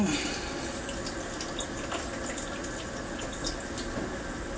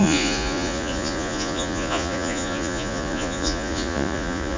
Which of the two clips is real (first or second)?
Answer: first